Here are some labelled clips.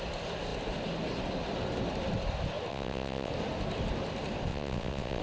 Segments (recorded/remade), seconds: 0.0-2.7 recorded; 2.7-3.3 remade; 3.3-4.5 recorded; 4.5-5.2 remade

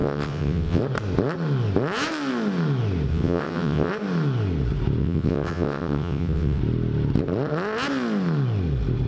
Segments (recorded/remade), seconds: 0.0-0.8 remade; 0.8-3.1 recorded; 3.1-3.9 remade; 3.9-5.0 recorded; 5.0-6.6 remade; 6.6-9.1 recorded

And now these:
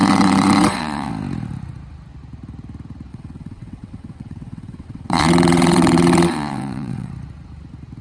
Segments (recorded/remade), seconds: 0.0-1.1 remade; 1.1-3.1 recorded; 3.1-7.1 remade; 7.1-8.0 recorded

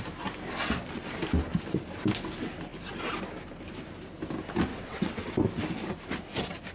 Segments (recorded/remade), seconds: 0.0-4.7 recorded; 4.7-5.3 remade; 5.3-6.7 recorded

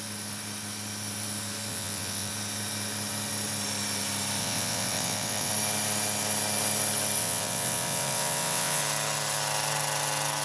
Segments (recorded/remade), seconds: 0.0-1.7 recorded; 1.7-2.3 remade; 2.3-4.4 recorded; 4.4-5.5 remade; 5.5-7.2 recorded; 7.2-8.8 remade; 8.8-10.4 recorded

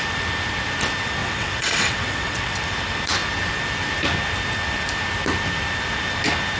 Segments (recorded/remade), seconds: 0.0-1.2 recorded; 1.2-2.6 remade; 2.6-6.6 recorded